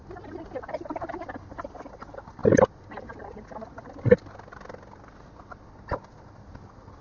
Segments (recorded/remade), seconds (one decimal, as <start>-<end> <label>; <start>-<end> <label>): 0.0-1.1 recorded; 1.1-2.4 remade; 2.4-6.2 recorded; 6.2-7.0 remade